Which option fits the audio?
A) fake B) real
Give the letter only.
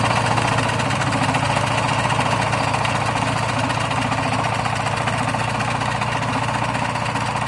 B